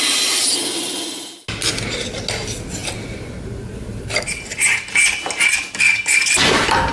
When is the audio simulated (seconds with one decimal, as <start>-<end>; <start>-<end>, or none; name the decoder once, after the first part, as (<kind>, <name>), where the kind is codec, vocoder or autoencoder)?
none